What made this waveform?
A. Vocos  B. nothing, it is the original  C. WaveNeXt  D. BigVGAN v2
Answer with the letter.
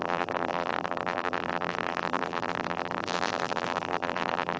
D